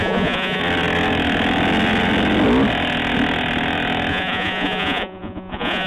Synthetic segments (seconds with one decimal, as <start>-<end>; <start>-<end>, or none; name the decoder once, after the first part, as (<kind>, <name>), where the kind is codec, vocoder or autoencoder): 0.0-0.6 (vocoder, Vocos); 4.1-5.9